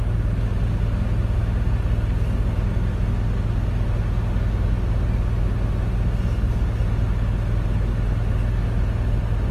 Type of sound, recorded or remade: recorded